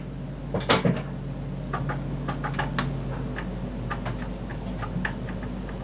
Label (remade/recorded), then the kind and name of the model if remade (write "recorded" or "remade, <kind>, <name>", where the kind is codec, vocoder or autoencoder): recorded